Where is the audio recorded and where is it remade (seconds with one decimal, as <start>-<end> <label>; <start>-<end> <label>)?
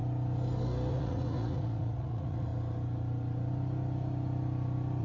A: 0.0-0.9 recorded; 0.9-2.5 remade; 2.5-5.0 recorded